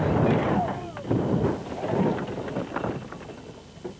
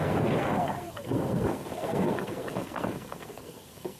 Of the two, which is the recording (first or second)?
first